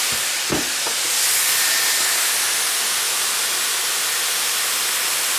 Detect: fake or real real